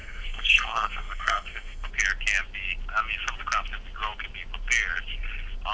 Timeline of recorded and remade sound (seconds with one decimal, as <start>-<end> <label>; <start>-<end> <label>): 0.0-1.9 remade; 1.9-5.7 recorded